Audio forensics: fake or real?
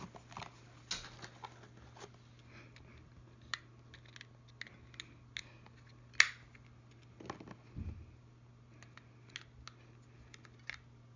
real